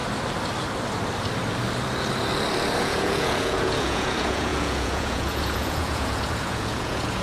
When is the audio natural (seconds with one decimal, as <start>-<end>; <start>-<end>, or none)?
0.0-2.8